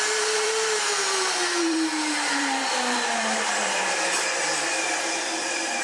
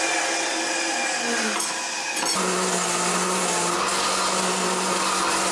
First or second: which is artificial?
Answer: first